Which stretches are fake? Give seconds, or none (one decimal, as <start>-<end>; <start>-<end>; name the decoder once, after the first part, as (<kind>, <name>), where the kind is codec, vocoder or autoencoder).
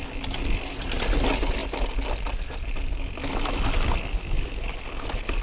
none